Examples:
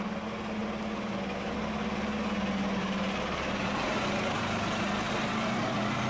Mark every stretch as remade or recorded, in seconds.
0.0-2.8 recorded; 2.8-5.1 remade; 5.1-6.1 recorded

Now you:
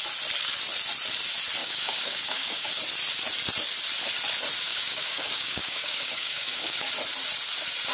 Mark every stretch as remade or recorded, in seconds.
0.0-1.6 recorded; 1.6-2.7 remade; 2.7-4.7 recorded; 4.7-6.9 remade; 6.9-7.9 recorded